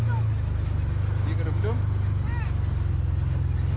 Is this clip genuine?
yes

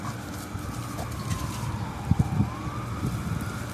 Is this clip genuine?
yes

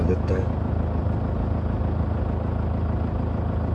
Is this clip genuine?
yes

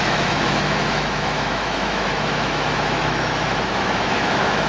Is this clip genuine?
no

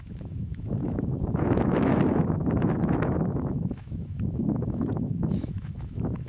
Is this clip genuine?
no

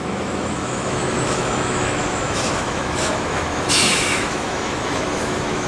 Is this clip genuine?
no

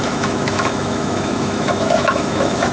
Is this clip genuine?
no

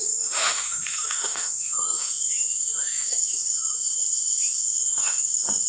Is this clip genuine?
no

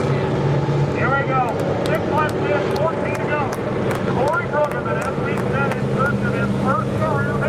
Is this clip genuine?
yes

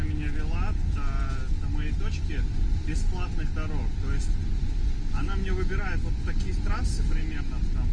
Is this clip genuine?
yes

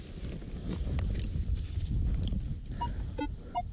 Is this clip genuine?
yes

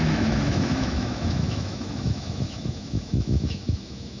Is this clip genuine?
no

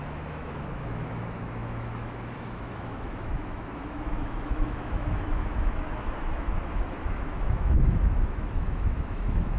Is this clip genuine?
no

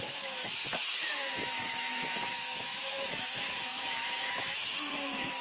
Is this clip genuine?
no